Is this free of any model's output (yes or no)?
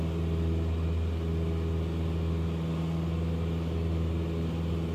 yes